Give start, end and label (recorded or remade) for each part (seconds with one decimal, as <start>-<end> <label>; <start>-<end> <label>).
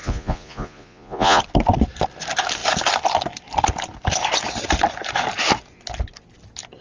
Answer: 0.0-1.4 remade; 1.4-6.8 recorded